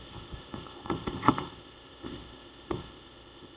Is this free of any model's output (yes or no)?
no